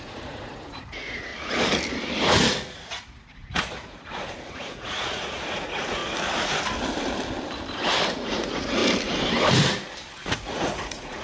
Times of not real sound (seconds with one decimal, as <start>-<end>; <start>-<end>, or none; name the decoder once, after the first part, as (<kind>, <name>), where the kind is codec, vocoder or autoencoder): 0.0-1.3 (vocoder, Vocos); 2.7-6.0; 8.1-8.8; 10.1-11.2

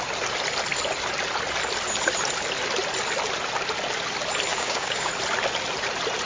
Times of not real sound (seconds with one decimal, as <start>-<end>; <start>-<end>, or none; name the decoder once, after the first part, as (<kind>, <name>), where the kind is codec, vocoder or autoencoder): 4.5-5.1 (codec, DAC)

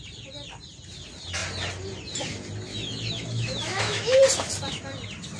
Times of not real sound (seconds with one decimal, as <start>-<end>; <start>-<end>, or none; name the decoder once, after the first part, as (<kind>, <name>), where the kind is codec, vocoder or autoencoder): 2.7-4.2 (autoencoder, DAC-VAE)

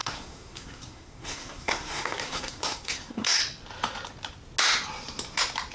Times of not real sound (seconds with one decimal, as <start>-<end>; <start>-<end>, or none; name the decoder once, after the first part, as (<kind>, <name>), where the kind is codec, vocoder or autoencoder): 0.0-3.4 (codec, SNAC)

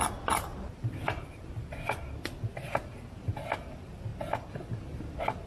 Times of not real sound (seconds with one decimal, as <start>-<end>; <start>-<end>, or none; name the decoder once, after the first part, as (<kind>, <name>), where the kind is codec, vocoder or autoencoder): 0.5-1.4 (vocoder, BigVGAN v2); 2.5-3.3

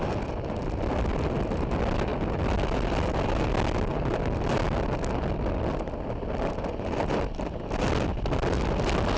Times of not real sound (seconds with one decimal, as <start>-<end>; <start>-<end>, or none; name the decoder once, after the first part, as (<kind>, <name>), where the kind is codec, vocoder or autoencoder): none

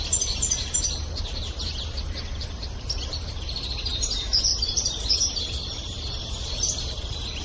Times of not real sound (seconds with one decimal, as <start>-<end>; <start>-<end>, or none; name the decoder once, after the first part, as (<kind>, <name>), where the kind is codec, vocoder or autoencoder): 0.0-7.4 (vocoder, BigVGAN v2)